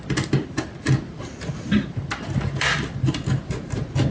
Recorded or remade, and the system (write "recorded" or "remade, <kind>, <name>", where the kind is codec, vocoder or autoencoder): recorded